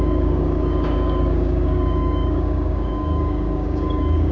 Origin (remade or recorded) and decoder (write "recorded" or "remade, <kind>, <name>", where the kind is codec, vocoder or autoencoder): remade, codec, DAC